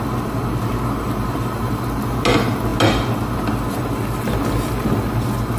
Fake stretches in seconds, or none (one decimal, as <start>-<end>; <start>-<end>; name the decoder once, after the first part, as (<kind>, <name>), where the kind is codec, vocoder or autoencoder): none